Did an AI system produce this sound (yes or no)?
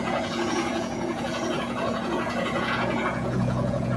yes